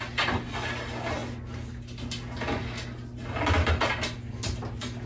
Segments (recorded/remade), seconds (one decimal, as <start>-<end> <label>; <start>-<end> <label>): 0.0-5.1 recorded